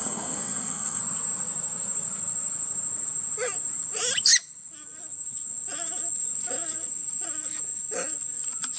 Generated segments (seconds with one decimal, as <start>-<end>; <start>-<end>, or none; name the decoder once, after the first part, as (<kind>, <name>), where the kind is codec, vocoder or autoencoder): 0.0-1.0 (codec, SNAC)